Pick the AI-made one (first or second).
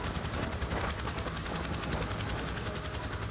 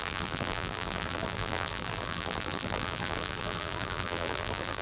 second